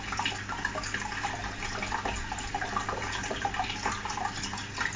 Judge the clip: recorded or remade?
recorded